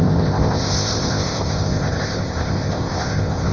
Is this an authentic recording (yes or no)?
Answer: no